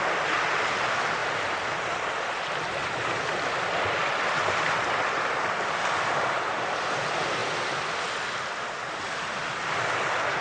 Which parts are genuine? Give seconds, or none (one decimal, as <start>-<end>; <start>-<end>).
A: 0.0-10.4